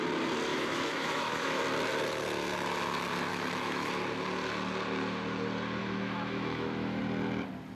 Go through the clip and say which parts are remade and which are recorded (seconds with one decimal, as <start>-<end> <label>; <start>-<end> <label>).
0.0-0.5 recorded; 0.5-1.6 remade; 1.6-3.3 recorded; 3.3-3.9 remade; 3.9-5.8 recorded; 5.8-7.0 remade; 7.0-7.7 recorded